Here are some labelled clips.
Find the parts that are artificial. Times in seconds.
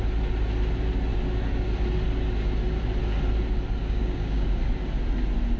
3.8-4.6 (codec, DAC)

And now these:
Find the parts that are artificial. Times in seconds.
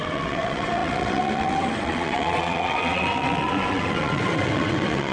0.0-5.1 (vocoder, WaveNeXt)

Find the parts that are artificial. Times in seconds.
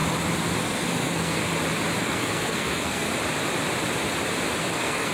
0.6-1.5 (codec, SNAC); 2.0-3.1; 4.6-5.1